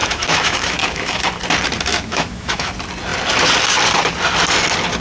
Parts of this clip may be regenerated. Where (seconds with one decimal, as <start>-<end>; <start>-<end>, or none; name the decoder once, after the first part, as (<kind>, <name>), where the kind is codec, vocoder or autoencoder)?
0.0-1.2 (autoencoder, DAC-VAE); 1.9-2.7